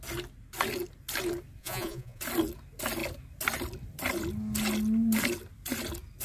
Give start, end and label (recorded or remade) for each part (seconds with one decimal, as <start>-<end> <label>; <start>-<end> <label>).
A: 0.0-1.6 recorded; 1.6-2.2 remade; 2.2-6.2 recorded